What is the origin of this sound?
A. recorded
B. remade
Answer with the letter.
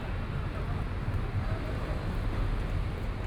A